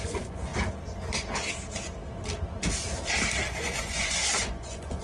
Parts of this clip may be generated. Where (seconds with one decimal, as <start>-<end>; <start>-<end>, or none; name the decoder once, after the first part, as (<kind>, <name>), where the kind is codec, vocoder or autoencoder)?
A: 0.0-0.5 (vocoder, Vocos); 3.5-5.0